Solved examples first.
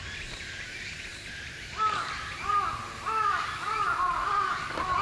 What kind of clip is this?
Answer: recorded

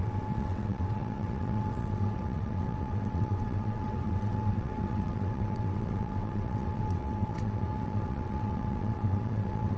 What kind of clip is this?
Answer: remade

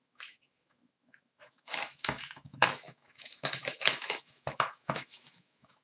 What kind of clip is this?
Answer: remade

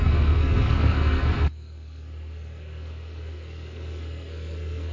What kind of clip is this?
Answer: remade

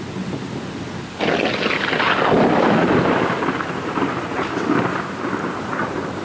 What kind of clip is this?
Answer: recorded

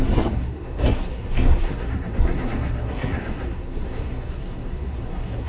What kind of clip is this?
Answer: remade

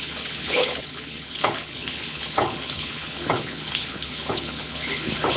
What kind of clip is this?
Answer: remade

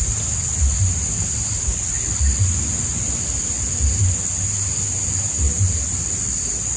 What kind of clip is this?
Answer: recorded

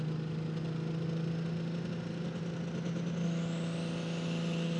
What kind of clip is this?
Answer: recorded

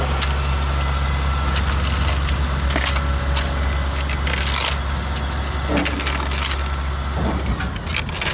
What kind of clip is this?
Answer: recorded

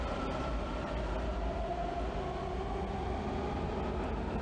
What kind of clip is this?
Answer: recorded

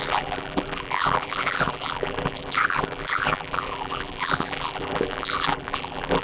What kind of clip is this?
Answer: remade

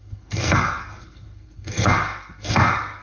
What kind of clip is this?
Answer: remade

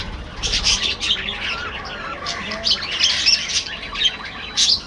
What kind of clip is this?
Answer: recorded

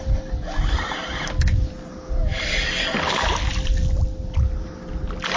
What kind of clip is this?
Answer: recorded